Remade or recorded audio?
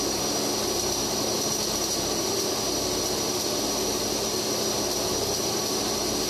recorded